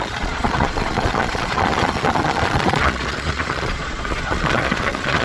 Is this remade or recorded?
remade